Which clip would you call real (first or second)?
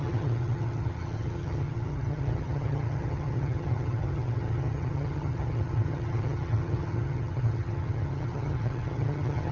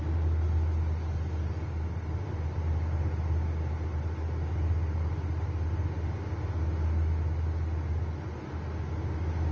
second